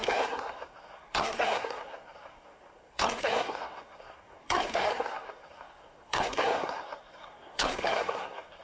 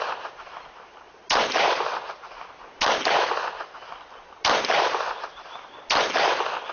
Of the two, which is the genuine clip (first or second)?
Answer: second